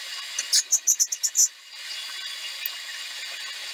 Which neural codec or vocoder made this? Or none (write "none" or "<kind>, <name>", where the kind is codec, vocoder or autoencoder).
none